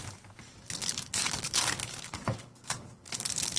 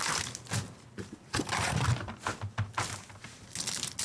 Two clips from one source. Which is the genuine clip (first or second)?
second